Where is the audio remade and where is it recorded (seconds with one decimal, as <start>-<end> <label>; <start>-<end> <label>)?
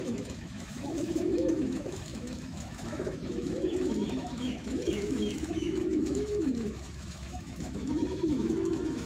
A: 0.0-9.1 remade